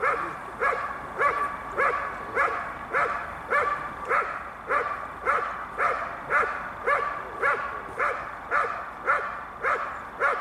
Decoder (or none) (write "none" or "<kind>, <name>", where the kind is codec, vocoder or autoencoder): vocoder, BigVGAN v2